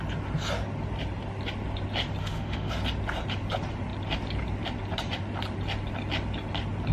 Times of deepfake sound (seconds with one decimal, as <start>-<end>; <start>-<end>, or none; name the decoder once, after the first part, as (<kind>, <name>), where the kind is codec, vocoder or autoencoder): 2.2-2.7 (autoencoder, DAC-VAE)